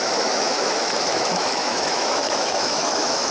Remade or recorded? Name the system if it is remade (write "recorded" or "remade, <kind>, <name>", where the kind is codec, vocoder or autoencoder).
remade, autoencoder, DAC-VAE